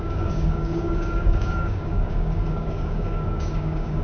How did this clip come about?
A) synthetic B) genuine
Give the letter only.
A